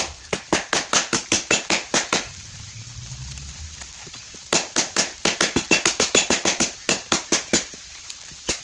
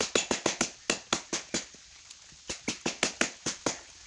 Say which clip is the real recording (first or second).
second